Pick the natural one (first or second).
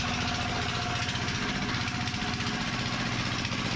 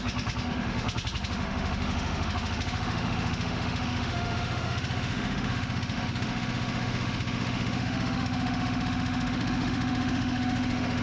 first